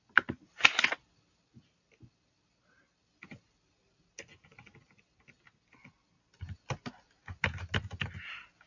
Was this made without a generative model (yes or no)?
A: yes